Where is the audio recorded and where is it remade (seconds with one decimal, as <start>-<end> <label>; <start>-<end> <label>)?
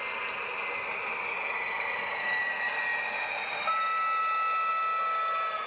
0.0-0.5 recorded; 0.5-2.4 remade; 2.4-5.7 recorded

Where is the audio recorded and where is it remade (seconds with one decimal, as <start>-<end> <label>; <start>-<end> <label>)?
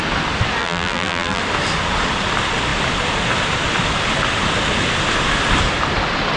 0.0-0.6 recorded; 0.6-1.4 remade; 1.4-6.4 recorded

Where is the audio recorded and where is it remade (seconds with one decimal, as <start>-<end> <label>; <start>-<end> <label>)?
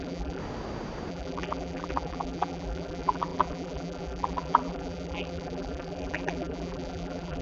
0.0-0.4 remade; 0.4-1.1 recorded; 1.1-7.4 remade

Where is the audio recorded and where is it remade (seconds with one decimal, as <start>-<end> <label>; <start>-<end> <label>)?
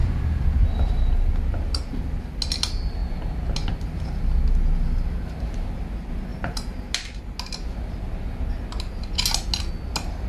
0.0-10.3 recorded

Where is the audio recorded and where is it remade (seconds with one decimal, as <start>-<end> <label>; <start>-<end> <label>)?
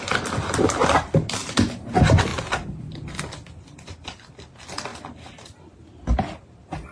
0.0-2.3 recorded; 2.3-3.2 remade; 3.2-6.9 recorded